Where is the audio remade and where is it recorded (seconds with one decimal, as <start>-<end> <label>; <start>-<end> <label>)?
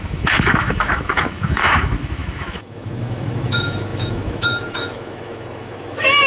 0.0-6.3 remade